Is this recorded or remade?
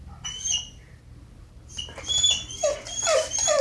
remade